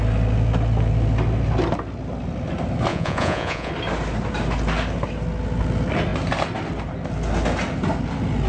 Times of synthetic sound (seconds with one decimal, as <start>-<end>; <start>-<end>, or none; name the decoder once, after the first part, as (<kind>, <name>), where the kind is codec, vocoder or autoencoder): 2.9-3.7 (vocoder, Vocos)

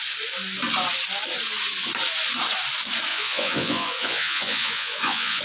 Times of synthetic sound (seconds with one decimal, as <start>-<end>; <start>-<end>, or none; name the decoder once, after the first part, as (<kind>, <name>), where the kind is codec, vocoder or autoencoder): 3.1-5.4 (vocoder, Vocos)

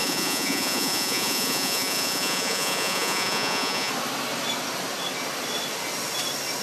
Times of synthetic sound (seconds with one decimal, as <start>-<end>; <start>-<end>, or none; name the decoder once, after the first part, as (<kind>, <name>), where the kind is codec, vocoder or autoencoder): 0.0-3.9 (vocoder, Vocos)

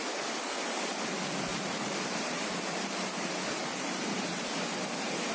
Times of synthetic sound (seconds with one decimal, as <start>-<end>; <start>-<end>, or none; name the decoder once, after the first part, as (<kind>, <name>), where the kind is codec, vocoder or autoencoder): 1.5-4.6 (vocoder, BigVGAN v2)